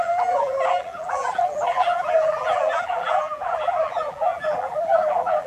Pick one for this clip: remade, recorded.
remade